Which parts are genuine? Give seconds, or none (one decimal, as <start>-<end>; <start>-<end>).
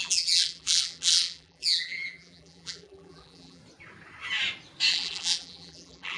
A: 3.6-4.9